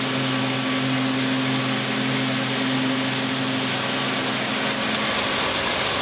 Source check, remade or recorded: recorded